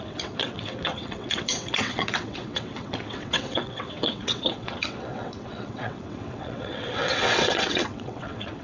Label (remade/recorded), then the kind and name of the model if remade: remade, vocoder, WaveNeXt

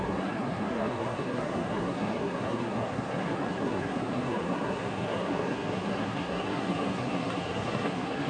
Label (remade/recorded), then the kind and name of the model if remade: remade, codec, SNAC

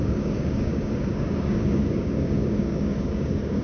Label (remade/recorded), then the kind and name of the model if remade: remade, codec, DAC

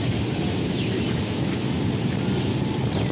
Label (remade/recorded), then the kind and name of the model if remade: recorded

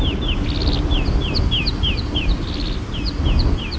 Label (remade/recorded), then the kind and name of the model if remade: recorded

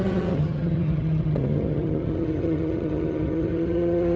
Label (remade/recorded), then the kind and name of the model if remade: remade, vocoder, HiFi-GAN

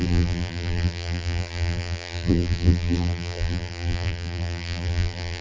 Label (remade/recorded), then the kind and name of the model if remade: remade, vocoder, BigVGAN v2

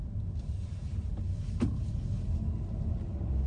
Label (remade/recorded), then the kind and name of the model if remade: recorded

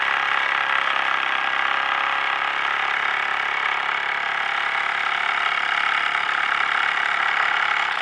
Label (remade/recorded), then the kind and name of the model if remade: recorded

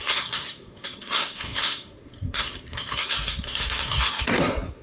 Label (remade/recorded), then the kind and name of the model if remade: remade, codec, SNAC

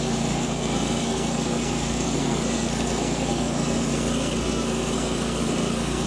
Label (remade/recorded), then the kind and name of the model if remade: remade, codec, SNAC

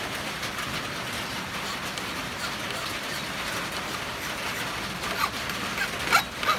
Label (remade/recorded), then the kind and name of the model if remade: recorded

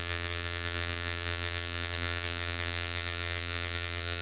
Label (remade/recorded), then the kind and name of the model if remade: remade, vocoder, BigVGAN v2